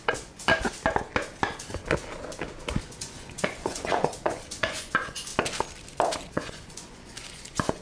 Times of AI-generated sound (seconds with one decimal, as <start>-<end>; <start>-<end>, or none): 0.0-0.5; 2.8-5.3; 6.3-7.8